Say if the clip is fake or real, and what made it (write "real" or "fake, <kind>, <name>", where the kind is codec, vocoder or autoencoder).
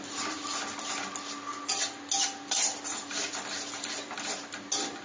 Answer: real